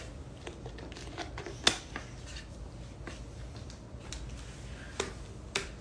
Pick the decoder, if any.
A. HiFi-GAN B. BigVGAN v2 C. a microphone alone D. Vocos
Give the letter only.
C